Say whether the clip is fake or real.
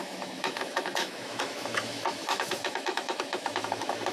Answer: fake